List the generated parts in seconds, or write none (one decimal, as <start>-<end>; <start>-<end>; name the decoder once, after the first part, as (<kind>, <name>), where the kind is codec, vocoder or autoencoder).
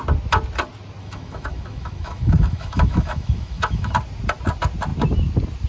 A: 1.0-3.9 (autoencoder, DAC-VAE)